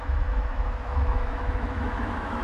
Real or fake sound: fake